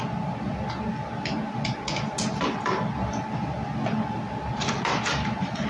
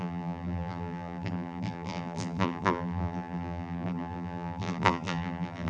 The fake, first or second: second